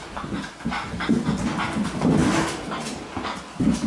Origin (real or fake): real